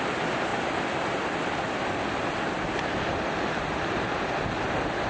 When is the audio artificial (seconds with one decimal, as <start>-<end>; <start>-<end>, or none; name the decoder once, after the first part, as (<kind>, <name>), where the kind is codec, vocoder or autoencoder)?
0.0-0.5 (vocoder, BigVGAN v2); 3.6-5.1